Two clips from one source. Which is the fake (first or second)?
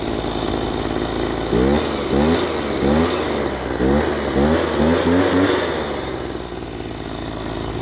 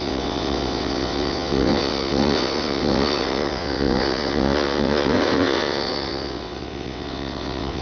second